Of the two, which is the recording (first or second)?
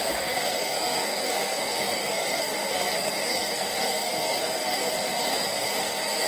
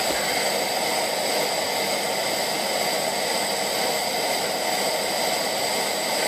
second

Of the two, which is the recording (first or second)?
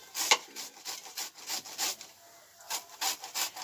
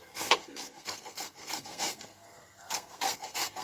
first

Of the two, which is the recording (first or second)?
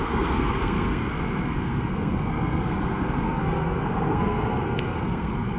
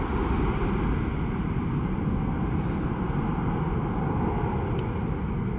second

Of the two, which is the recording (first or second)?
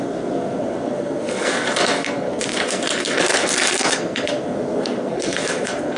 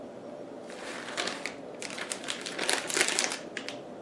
second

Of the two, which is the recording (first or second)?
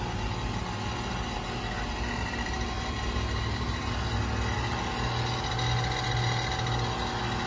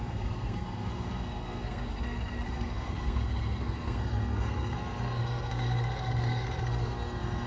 first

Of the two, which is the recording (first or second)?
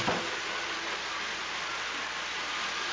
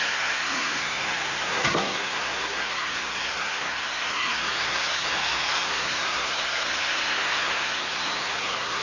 first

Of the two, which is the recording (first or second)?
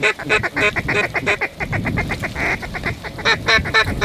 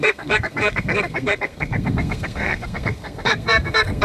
first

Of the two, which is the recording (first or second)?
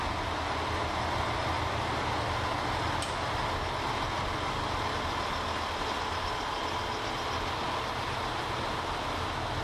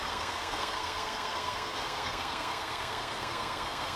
first